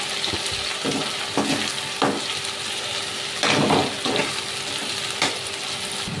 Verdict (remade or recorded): recorded